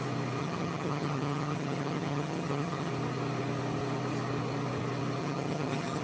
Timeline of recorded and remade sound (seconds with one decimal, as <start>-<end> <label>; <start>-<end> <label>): 0.0-0.4 recorded; 0.4-2.9 remade; 2.9-5.2 recorded; 5.2-6.0 remade